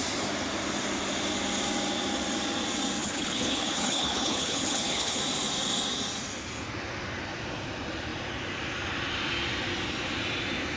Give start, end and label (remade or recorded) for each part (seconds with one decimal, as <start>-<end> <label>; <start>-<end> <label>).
0.0-3.0 recorded; 3.0-5.2 remade; 5.2-10.8 recorded